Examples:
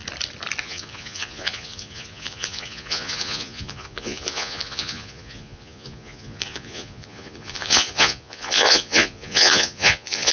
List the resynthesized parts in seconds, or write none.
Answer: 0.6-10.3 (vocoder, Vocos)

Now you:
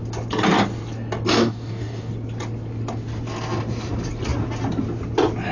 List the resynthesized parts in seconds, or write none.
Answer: 1.4-2.1 (codec, DAC)